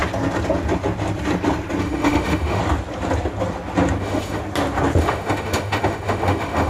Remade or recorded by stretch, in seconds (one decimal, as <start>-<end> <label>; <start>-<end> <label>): 0.0-1.8 recorded; 1.8-2.6 remade; 2.6-4.0 recorded; 4.0-4.4 remade; 4.4-5.0 recorded; 5.0-6.7 remade